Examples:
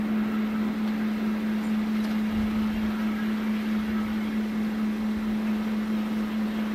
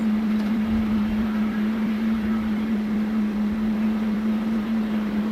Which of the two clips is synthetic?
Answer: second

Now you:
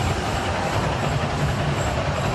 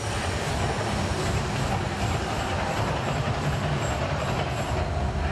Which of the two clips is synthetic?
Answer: first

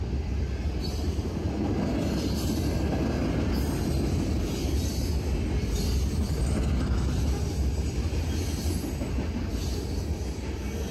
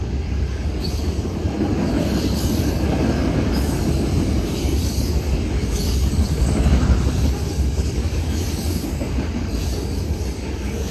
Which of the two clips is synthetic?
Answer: second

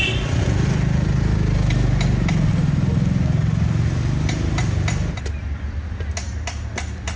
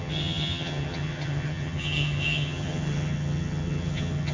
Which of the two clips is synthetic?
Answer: second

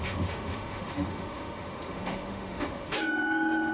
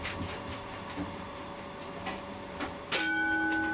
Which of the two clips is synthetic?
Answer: first